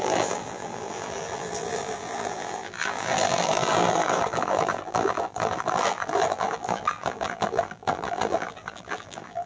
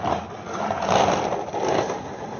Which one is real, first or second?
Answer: second